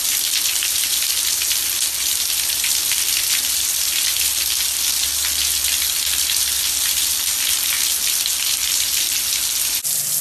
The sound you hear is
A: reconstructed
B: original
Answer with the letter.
B